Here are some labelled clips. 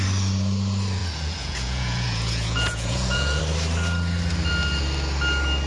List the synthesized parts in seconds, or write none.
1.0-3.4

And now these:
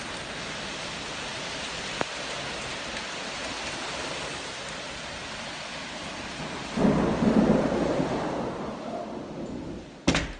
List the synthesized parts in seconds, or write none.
none

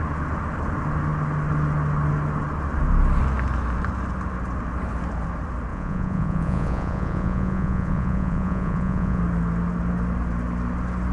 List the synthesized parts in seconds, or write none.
5.7-9.2

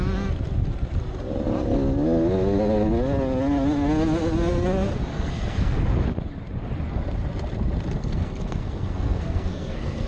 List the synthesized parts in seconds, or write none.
5.1-5.8; 8.0-10.1

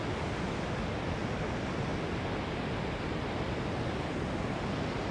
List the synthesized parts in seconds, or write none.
none

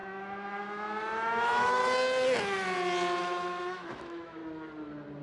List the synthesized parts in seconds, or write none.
0.0-1.8; 3.2-4.4

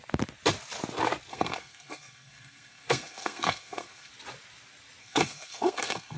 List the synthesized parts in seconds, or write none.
1.3-4.1; 5.0-6.2